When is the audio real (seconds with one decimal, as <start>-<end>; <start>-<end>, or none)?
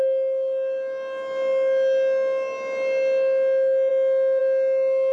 0.0-5.1